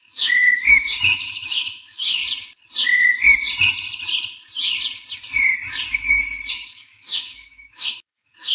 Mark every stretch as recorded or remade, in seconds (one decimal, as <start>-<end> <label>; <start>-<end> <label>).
0.0-2.2 remade; 2.2-6.5 recorded; 6.5-8.5 remade